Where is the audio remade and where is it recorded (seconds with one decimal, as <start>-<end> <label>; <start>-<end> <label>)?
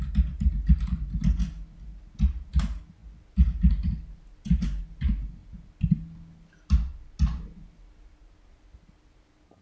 0.0-9.6 recorded